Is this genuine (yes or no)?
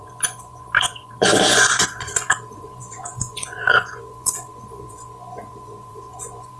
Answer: no